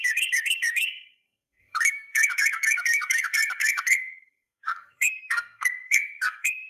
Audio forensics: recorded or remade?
remade